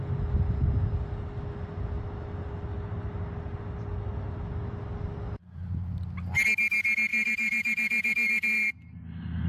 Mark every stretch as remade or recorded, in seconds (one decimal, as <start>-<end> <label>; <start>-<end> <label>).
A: 0.0-7.1 recorded; 7.1-9.5 remade